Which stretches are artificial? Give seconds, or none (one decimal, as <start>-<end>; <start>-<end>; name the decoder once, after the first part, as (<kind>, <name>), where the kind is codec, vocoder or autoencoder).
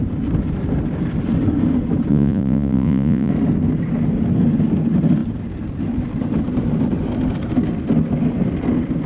2.1-3.3 (vocoder, Vocos)